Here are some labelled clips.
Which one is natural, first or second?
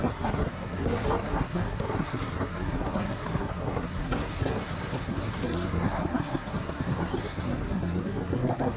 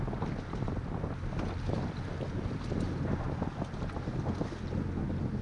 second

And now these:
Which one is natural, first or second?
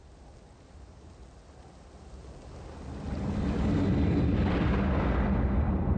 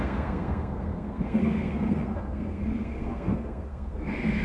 first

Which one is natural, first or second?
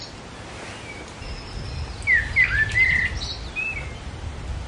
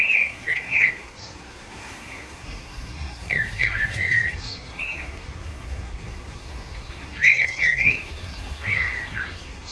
first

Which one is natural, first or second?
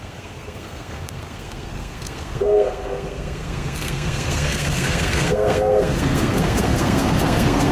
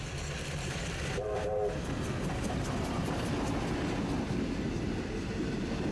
second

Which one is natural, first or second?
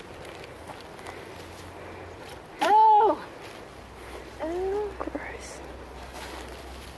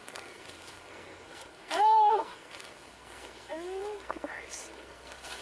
first